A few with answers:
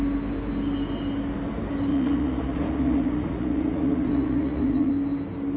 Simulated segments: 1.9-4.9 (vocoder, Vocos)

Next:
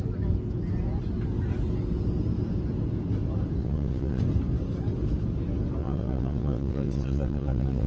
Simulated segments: 3.6-4.2 (vocoder, WaveNeXt); 5.8-7.9

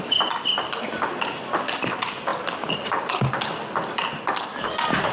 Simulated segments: 4.5-5.1 (codec, DAC)

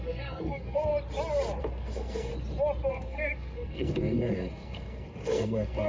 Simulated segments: 0.0-0.9 (codec, SNAC); 1.6-2.3; 2.9-5.9

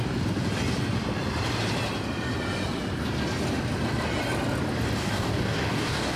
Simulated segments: 5.0-6.2 (codec, DAC)

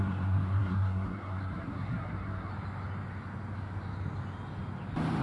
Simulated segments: 0.0-2.5 (codec, SNAC)

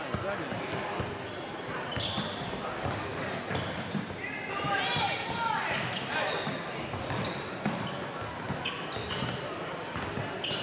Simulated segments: none

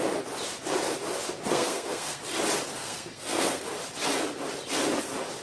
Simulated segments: 1.5-2.2 (codec, SNAC); 2.8-3.6